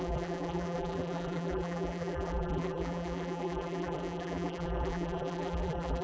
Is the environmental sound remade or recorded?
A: remade